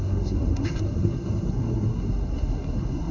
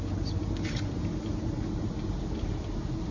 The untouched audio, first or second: second